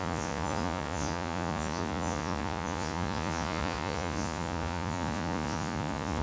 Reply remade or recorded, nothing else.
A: remade